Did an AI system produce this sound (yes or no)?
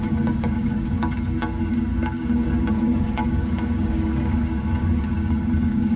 yes